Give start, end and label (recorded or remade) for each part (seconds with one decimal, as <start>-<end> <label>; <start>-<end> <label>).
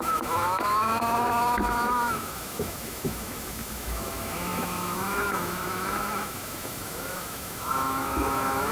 0.0-8.7 remade